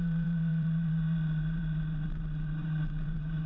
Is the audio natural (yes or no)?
no